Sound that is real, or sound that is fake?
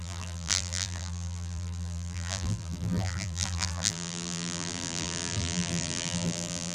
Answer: fake